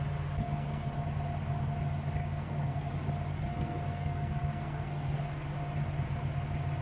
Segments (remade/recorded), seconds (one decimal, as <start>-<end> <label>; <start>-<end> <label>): 0.0-0.4 recorded; 0.4-0.9 remade; 0.9-2.2 recorded; 2.2-2.9 remade; 2.9-3.5 recorded; 3.5-5.2 remade; 5.2-6.8 recorded